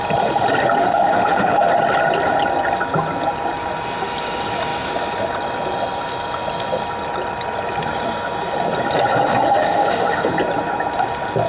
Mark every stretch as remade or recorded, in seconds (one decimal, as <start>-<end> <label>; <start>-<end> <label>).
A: 0.0-0.9 recorded; 0.9-1.7 remade; 1.7-9.6 recorded; 9.6-10.3 remade; 10.3-11.5 recorded